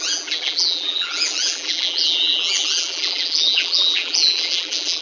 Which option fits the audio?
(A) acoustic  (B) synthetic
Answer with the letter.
B